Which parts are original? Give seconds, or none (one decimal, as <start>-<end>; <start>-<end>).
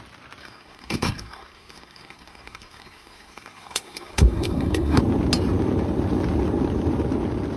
0.0-0.4; 5.0-7.6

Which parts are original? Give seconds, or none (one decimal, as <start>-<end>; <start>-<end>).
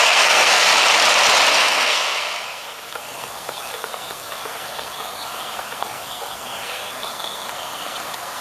0.7-1.5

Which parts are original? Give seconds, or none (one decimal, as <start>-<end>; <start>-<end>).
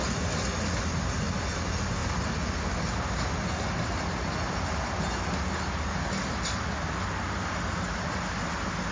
0.0-8.9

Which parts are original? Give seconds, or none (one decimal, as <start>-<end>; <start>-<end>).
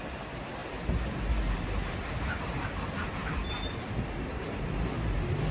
0.0-5.5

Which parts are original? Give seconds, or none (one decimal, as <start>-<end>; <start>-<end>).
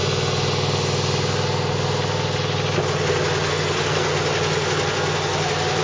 0.0-3.5; 4.1-5.8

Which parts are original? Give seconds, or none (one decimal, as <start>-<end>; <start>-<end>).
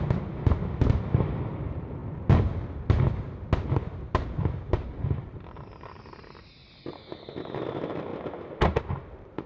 0.0-9.5